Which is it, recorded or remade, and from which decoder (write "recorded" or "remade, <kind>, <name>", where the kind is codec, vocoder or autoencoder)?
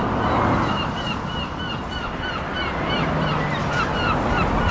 recorded